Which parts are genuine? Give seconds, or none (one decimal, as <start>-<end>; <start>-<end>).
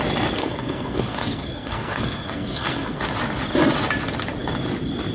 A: 0.0-0.4; 3.0-5.1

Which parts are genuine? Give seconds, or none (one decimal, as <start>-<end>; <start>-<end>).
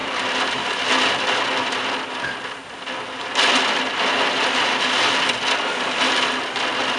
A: 0.0-7.0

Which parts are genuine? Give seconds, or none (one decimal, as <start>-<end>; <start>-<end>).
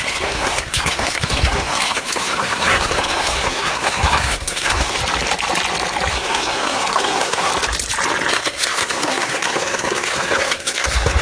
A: 5.0-6.1; 7.5-8.3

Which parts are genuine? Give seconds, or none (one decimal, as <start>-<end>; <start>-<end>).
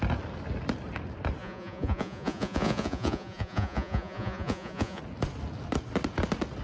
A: 0.0-1.4; 5.0-6.6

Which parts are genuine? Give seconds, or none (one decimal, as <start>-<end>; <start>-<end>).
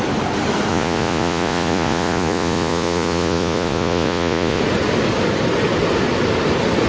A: 0.0-0.7; 4.6-6.9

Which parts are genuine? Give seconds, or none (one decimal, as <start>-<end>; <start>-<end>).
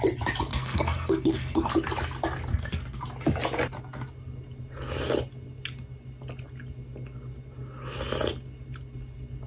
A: 0.0-0.5; 1.7-2.5; 3.0-9.5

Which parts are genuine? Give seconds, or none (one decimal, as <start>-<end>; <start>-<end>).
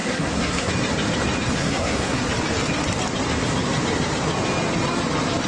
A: 0.7-1.6; 2.2-5.5